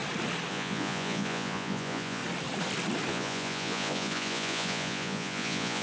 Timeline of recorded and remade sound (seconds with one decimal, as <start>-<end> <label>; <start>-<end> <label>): 0.0-0.5 recorded; 0.5-2.2 remade; 2.2-3.1 recorded; 3.1-5.8 remade